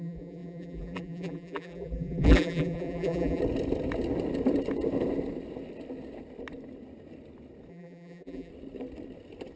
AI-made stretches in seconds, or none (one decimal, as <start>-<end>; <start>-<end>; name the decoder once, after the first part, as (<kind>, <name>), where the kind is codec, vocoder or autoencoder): 0.0-3.4 (vocoder, BigVGAN v2); 7.7-8.5